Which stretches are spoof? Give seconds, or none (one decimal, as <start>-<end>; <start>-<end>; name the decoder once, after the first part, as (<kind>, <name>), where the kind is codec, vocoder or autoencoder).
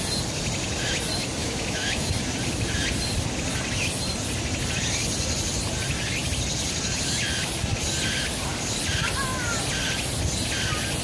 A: 1.4-2.1 (autoencoder, DAC-VAE)